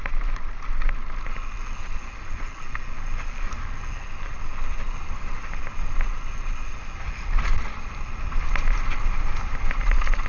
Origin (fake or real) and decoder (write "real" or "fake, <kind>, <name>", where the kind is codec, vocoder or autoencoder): real